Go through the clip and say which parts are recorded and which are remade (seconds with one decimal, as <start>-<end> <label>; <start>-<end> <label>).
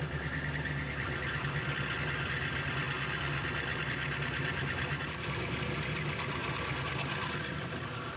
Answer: 0.0-8.2 recorded